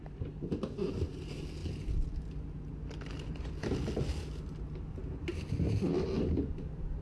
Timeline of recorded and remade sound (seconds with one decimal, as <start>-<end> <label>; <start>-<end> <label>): 0.0-7.0 recorded